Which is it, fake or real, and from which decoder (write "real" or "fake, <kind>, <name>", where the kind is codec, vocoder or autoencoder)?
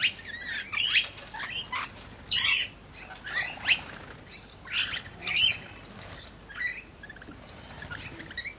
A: real